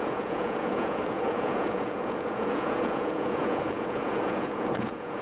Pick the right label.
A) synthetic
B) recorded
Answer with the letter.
A